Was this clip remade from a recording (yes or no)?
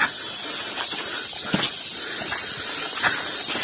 no